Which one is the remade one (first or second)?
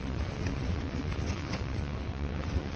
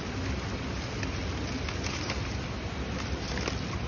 first